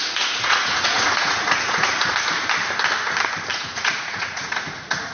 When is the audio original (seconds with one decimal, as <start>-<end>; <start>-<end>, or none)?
2.1-3.5